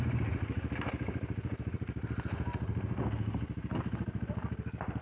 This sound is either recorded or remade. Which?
recorded